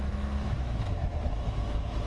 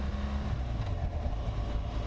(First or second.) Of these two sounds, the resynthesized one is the first